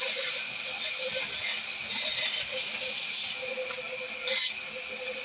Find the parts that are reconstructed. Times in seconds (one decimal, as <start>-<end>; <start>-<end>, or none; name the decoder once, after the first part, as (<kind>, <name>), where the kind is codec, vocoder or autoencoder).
none

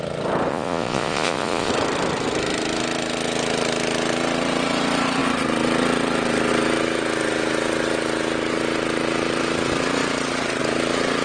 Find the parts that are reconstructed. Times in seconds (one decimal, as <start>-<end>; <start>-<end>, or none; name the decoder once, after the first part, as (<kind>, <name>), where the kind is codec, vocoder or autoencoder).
0.5-1.7 (vocoder, Vocos)

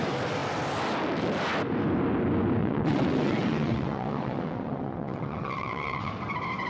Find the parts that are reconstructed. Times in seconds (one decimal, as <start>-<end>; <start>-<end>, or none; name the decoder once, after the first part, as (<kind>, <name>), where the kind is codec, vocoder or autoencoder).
2.6-6.1 (vocoder, WaveNeXt)

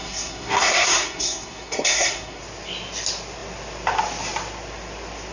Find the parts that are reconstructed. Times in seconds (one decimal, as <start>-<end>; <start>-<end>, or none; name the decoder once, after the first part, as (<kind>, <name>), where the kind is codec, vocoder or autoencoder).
0.0-2.4 (codec, SNAC)